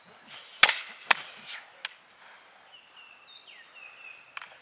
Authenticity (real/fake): real